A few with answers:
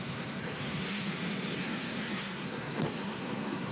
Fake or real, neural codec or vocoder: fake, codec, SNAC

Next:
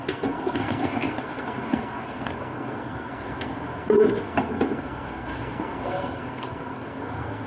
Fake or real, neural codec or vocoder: fake, codec, SNAC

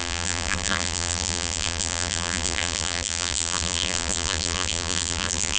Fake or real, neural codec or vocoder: fake, vocoder, BigVGAN v2